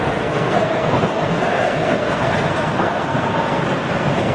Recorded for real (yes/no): no